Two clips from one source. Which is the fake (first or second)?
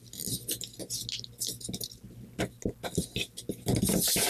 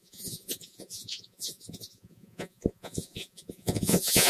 second